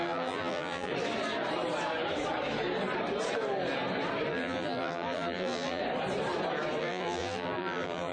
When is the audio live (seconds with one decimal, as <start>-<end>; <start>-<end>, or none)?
0.9-4.3; 5.8-6.8